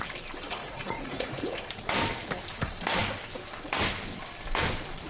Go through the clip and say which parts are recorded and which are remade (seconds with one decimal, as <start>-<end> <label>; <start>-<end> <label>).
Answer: 0.0-0.6 recorded; 0.6-1.6 remade; 1.6-5.1 recorded